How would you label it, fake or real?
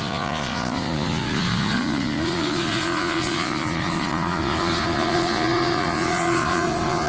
fake